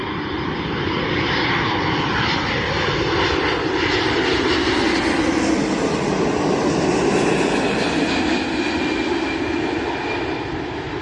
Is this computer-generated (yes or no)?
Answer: no